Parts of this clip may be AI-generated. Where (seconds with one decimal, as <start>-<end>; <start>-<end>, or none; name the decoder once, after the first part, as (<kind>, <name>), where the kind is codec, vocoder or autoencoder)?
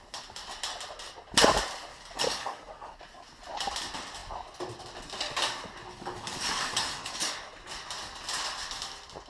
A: 1.9-3.0 (codec, DAC); 5.9-7.5